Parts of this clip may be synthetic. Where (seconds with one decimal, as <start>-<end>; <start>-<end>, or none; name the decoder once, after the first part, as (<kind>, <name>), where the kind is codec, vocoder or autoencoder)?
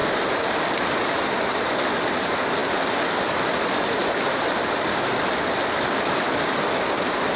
0.0-1.2 (vocoder, BigVGAN v2)